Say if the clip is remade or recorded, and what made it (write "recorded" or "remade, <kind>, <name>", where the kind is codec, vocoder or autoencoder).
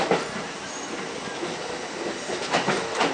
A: recorded